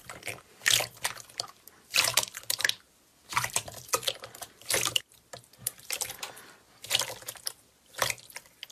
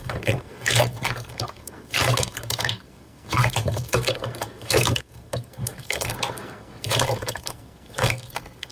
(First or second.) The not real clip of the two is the second